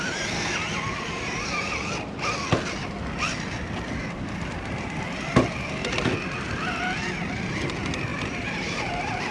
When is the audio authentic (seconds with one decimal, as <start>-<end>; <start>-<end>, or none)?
0.0-8.1